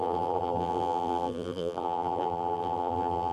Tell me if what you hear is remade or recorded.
remade